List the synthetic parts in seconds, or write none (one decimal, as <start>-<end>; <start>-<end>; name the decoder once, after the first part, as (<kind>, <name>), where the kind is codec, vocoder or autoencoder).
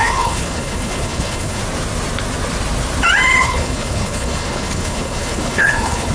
0.0-1.6 (codec, HILCodec); 3.4-6.1